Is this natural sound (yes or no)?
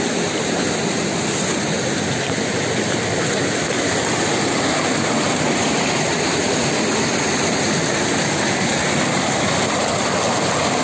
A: yes